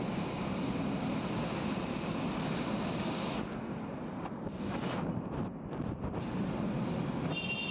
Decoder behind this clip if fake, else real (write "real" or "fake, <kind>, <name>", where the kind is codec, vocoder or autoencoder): real